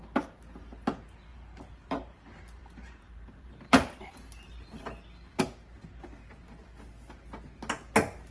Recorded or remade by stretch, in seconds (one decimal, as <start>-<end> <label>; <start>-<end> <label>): 0.0-1.3 recorded; 1.3-2.2 remade; 2.2-2.6 recorded; 2.6-3.9 remade; 3.9-8.3 recorded